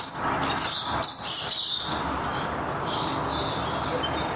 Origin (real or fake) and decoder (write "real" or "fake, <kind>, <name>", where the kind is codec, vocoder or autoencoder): real